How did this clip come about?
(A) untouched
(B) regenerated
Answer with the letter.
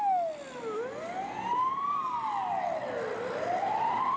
A